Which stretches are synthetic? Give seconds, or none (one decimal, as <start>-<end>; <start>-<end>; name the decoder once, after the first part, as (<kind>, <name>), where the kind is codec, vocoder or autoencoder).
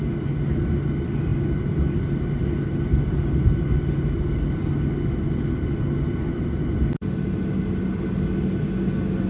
none